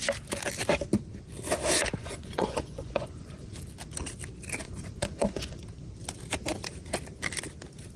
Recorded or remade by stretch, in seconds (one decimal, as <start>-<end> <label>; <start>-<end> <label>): 0.0-2.0 recorded; 2.0-3.6 remade; 3.6-4.6 recorded; 4.6-5.6 remade; 5.6-8.0 recorded